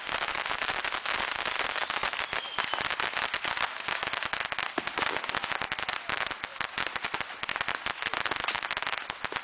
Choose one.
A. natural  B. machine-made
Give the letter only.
A